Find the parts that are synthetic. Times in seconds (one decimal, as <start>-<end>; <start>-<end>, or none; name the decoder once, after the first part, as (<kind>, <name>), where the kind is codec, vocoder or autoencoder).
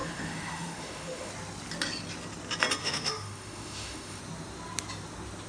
0.0-1.3 (autoencoder, DAC-VAE); 2.8-4.2